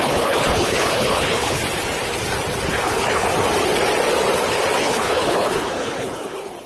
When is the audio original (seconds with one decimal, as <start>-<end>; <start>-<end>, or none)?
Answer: 1.6-2.7; 3.3-4.8